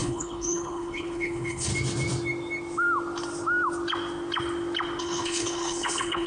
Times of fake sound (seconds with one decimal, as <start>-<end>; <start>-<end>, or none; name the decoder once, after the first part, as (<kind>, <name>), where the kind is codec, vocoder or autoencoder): 0.0-1.7 (codec, HILCodec); 5.0-6.3